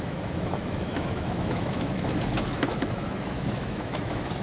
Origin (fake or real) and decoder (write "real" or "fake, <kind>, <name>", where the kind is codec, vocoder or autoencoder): fake, autoencoder, DAC-VAE